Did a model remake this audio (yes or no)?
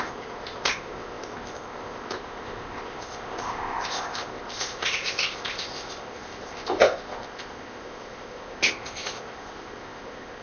yes